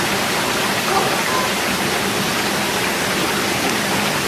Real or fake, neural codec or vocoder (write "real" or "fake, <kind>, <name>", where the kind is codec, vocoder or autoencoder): real